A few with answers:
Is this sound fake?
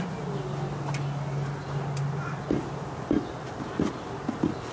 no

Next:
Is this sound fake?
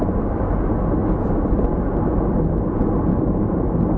no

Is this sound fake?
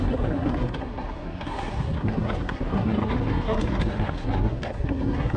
yes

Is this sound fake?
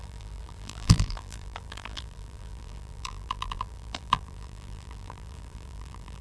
yes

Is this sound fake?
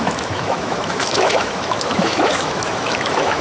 yes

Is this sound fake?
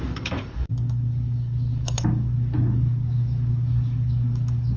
yes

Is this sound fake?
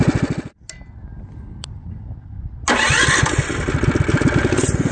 no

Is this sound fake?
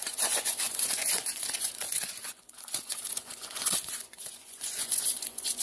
yes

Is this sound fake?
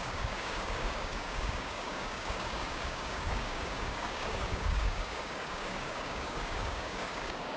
yes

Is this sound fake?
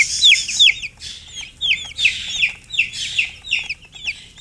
no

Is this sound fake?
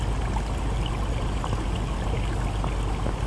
no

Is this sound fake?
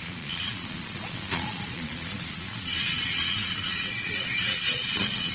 yes